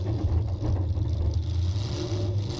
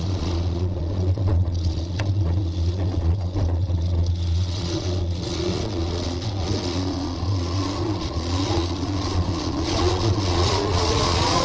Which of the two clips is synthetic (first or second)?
second